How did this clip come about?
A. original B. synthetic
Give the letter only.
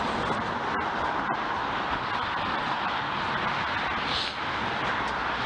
A